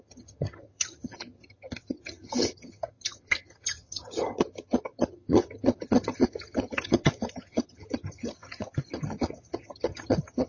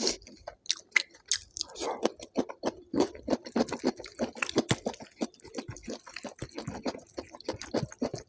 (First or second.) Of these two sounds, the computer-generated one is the first